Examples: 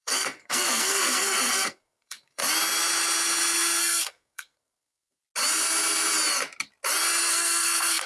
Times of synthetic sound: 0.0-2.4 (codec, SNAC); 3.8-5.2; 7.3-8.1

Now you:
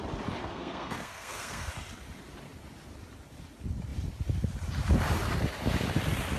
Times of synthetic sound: 0.4-1.7 (codec, SNAC)

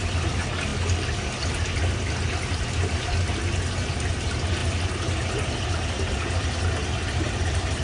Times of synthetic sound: none

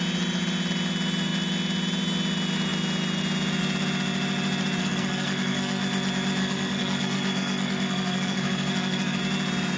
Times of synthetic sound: 4.8-5.8 (codec, SNAC); 6.4-9.2